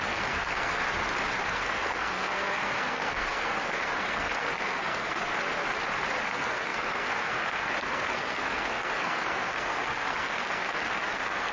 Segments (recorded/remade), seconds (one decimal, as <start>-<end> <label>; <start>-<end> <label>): 0.0-0.8 remade; 0.8-1.5 recorded; 1.5-5.3 remade; 5.3-6.3 recorded; 6.3-11.5 remade